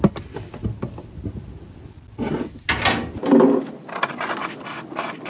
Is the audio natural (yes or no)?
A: yes